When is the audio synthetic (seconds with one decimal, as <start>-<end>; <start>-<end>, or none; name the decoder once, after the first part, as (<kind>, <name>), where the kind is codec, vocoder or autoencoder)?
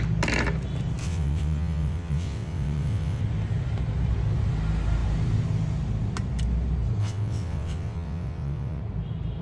1.0-3.2 (vocoder, WaveNeXt); 7.0-8.8